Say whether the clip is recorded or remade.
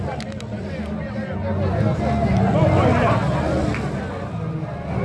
recorded